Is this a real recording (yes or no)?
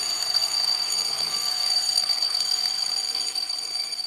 no